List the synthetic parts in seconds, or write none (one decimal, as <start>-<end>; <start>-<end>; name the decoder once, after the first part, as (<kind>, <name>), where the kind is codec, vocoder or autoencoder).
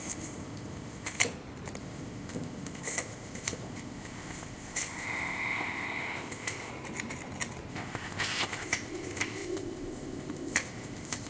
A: 0.0-1.2 (codec, ZipCodec); 1.8-6.7; 7.7-11.3